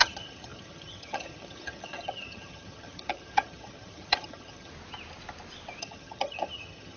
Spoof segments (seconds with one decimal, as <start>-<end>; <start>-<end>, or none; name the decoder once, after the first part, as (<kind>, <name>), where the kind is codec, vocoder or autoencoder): 0.0-4.7 (vocoder, HiFi-GAN); 5.8-7.0